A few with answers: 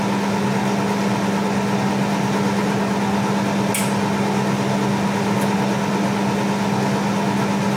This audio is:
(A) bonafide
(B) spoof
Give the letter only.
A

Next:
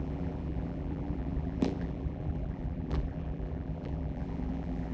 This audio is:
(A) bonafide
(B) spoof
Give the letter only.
B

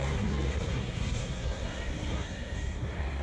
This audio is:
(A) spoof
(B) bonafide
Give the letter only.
A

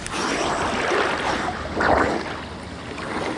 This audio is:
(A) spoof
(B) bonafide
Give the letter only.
B